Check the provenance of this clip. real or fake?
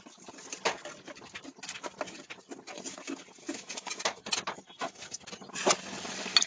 real